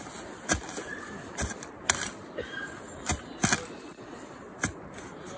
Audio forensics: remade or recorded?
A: recorded